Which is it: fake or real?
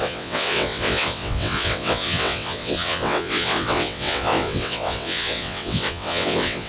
fake